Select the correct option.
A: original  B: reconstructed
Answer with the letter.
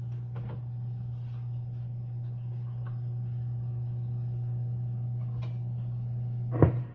A